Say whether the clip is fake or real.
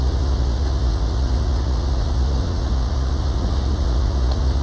fake